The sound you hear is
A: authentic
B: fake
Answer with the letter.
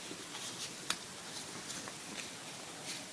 A